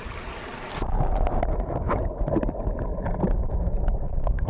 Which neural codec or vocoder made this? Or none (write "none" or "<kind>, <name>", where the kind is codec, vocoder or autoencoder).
none